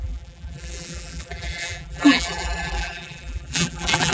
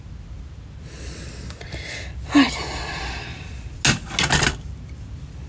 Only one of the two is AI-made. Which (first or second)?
first